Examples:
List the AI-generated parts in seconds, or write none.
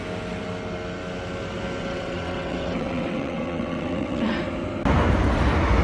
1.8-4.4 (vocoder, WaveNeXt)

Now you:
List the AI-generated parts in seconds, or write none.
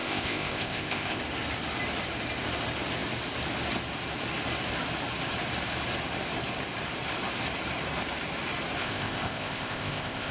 0.0-1.2 (codec, ZipCodec); 8.8-10.3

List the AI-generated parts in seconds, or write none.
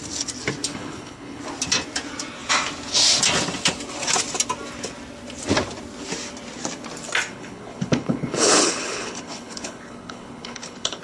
0.7-1.4 (codec, HILCodec); 7.3-11.0